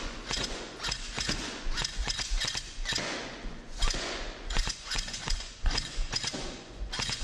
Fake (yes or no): yes